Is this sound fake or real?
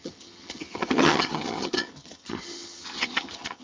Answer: fake